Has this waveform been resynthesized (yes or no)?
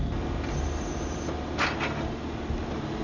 no